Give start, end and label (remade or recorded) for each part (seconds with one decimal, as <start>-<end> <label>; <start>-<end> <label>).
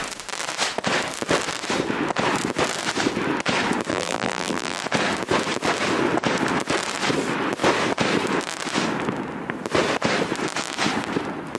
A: 0.0-3.9 recorded; 3.9-4.8 remade; 4.8-11.6 recorded